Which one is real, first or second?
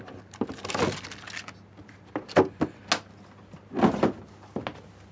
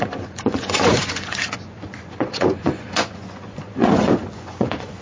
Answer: first